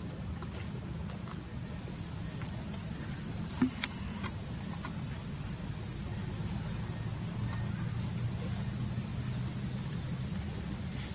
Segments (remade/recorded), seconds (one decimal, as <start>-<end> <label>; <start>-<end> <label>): 0.0-11.1 recorded

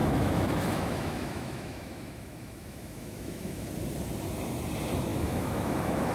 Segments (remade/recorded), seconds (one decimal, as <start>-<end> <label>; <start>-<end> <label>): 0.0-3.7 remade; 3.7-5.1 recorded; 5.1-6.1 remade

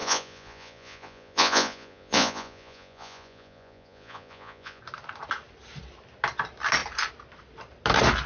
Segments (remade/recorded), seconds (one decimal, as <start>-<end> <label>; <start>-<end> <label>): 0.0-4.8 remade; 4.8-8.3 recorded

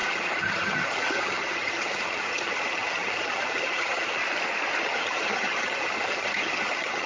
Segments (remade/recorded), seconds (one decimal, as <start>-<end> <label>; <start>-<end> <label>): 0.0-4.2 remade; 4.2-4.8 recorded; 4.8-7.1 remade

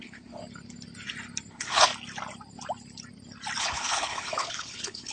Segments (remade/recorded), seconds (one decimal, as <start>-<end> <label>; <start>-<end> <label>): 0.0-0.4 remade; 0.4-1.5 recorded; 1.5-1.9 remade; 1.9-3.6 recorded; 3.6-5.1 remade

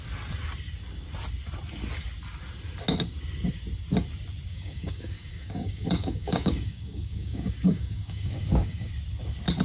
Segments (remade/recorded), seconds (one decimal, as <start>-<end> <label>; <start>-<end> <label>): 0.0-4.5 recorded; 4.5-8.9 remade; 8.9-9.6 recorded